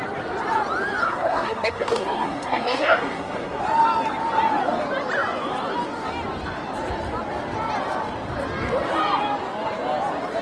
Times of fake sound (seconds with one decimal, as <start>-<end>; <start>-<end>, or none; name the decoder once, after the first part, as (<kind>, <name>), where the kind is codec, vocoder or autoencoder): 1.0-3.6 (codec, SNAC)